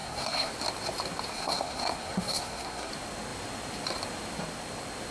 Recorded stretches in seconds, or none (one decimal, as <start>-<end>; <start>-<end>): 0.5-1.3; 2.9-5.1